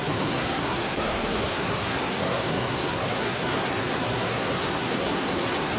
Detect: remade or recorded remade